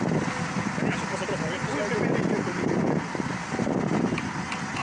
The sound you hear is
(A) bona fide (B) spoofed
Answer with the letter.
A